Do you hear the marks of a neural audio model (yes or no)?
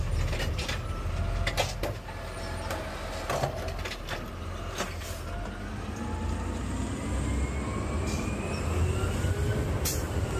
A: no